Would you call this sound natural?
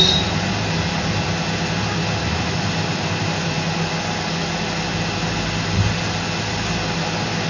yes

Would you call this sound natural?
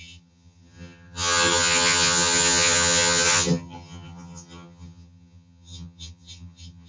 no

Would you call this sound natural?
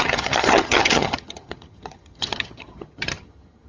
no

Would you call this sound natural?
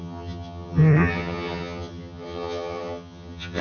no